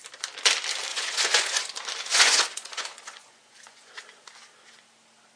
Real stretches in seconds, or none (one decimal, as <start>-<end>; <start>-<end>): 0.0-0.9; 1.7-2.1; 3.9-5.4